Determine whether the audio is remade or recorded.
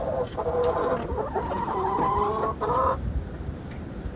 recorded